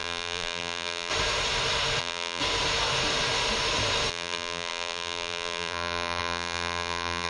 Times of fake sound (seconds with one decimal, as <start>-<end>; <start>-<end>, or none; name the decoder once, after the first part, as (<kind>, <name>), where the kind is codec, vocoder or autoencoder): 0.0-1.1 (vocoder, BigVGAN v2); 2.0-2.4; 4.1-7.3